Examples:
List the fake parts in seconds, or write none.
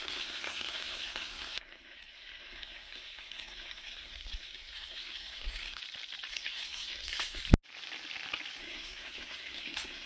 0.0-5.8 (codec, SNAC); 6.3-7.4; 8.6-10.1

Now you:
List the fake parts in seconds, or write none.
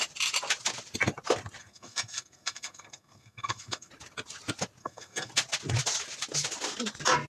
1.6-3.9 (codec, SNAC); 4.8-5.3